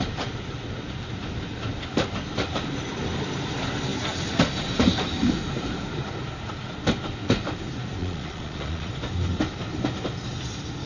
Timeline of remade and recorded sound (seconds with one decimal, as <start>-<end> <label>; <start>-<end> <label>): 0.0-8.0 recorded; 8.0-8.9 remade; 8.9-10.9 recorded